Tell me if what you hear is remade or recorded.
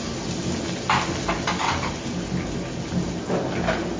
recorded